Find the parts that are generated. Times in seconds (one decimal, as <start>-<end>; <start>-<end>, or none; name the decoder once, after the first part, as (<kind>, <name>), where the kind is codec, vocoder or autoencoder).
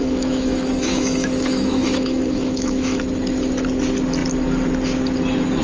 0.0-3.0 (autoencoder, DAC-VAE)